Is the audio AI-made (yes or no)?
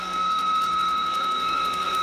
yes